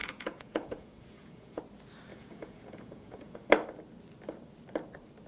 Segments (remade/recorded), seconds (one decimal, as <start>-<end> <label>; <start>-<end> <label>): 0.0-1.6 remade; 1.6-2.1 recorded; 2.1-3.5 remade; 3.5-5.3 recorded